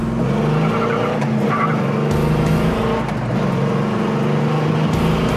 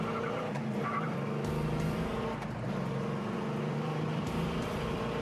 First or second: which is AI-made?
second